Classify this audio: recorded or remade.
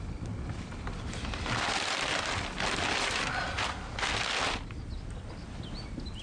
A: recorded